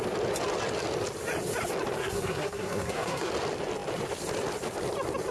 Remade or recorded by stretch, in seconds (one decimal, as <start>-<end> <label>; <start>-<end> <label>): 0.0-2.0 recorded; 2.0-3.3 remade; 3.3-5.3 recorded